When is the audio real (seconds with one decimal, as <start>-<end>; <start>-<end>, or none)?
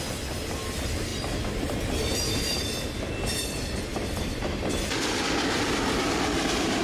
0.0-3.9; 5.3-6.8